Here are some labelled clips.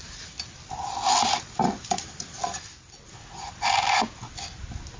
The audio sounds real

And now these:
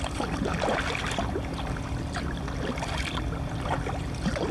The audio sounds fake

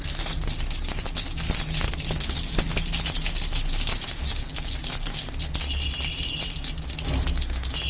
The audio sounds real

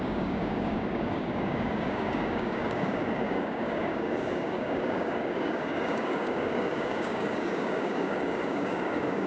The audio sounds fake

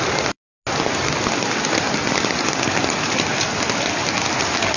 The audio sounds real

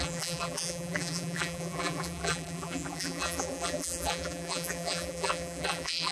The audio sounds fake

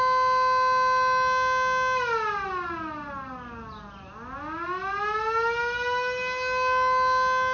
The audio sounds real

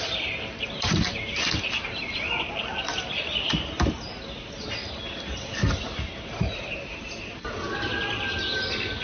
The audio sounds real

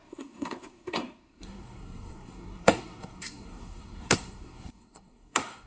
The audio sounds fake